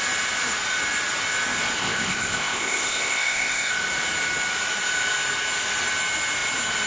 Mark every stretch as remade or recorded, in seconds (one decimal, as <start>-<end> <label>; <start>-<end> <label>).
0.0-1.8 recorded; 1.8-3.7 remade; 3.7-6.9 recorded